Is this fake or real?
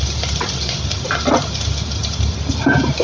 real